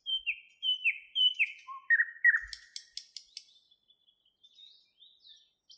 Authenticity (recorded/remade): recorded